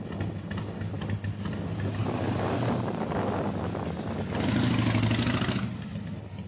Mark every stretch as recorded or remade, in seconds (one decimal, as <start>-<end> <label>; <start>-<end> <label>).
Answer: 0.0-6.5 recorded